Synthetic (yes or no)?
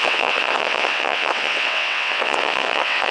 yes